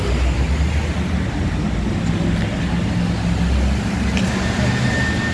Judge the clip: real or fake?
real